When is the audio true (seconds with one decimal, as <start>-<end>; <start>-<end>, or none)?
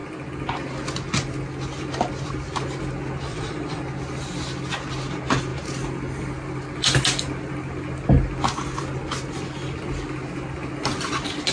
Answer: 0.0-3.3; 3.8-11.5